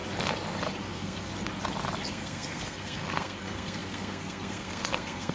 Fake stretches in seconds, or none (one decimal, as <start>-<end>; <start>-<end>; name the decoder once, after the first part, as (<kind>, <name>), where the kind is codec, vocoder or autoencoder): 0.8-1.3 (codec, SNAC); 2.1-5.3